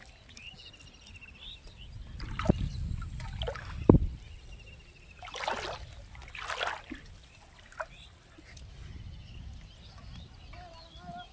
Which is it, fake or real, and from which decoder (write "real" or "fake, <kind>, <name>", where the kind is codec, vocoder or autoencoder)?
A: real